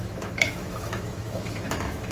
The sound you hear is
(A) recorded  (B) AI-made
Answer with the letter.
B